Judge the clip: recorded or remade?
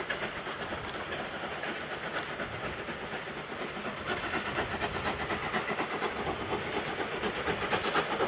recorded